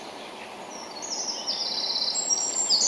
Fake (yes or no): no